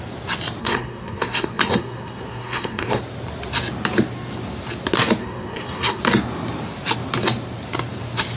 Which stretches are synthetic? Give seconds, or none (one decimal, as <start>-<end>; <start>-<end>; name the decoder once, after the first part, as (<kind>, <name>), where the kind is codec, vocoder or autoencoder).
0.6-3.0 (codec, SNAC); 5.2-6.0